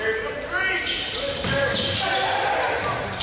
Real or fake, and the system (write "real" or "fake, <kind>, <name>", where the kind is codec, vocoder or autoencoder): real